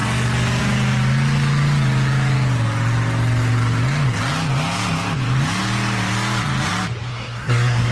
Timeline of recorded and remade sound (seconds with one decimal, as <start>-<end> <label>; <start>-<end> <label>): 0.0-7.1 recorded; 7.1-7.9 remade